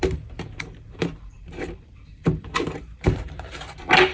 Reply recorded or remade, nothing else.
remade